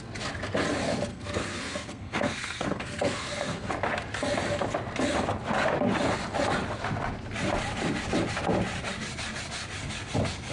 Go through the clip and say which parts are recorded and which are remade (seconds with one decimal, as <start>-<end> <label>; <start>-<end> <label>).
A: 0.0-1.1 recorded; 1.1-3.7 remade; 3.7-10.5 recorded